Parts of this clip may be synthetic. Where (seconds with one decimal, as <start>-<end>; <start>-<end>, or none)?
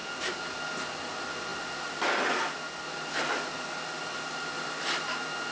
none